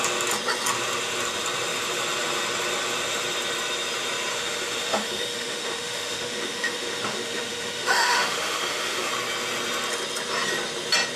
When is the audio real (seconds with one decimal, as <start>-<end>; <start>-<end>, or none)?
0.0-4.3; 9.1-11.2